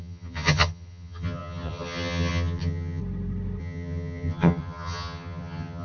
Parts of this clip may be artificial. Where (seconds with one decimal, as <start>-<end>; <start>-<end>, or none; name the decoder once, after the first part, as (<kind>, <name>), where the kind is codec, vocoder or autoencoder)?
0.0-3.0 (vocoder, HiFi-GAN); 3.6-5.8